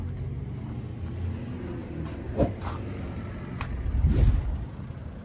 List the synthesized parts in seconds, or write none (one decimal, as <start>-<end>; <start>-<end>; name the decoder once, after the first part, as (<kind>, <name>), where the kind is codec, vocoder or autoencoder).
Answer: none